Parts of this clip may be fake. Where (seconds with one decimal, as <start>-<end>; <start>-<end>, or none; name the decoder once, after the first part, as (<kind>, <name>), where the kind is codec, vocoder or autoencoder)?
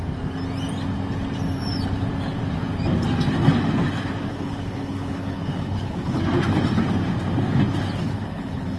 4.3-6.2 (codec, HILCodec); 8.0-8.8